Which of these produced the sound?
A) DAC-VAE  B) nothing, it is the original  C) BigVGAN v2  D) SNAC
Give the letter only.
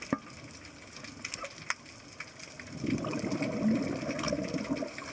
B